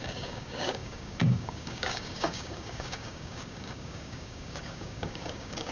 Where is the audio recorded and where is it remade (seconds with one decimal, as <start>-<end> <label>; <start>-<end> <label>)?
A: 0.0-5.7 remade